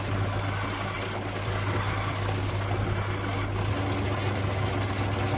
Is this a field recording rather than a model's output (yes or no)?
yes